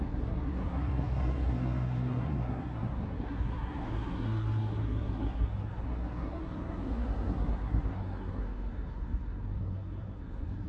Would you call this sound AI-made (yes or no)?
yes